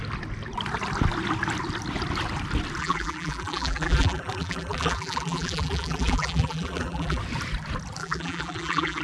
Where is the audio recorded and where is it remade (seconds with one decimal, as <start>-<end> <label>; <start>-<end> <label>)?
0.0-2.8 recorded; 2.8-7.2 remade; 7.2-8.0 recorded; 8.0-9.0 remade